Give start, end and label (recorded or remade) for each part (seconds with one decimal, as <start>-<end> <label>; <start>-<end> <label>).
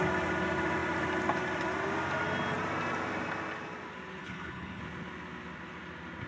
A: 0.0-4.2 recorded; 4.2-4.8 remade; 4.8-6.3 recorded